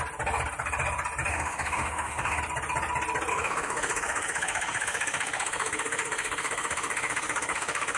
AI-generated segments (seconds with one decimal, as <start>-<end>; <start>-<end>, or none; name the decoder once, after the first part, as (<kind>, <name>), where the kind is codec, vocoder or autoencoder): 1.3-2.4 (autoencoder, DAC-VAE); 3.3-8.0